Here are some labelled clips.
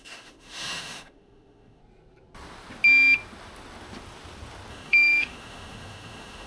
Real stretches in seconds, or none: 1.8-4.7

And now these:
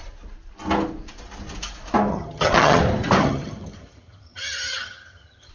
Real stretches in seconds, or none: 0.0-2.1; 2.8-3.2